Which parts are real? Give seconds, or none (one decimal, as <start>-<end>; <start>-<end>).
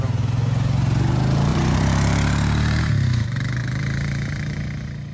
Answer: 0.0-1.5; 2.8-3.6; 4.6-5.1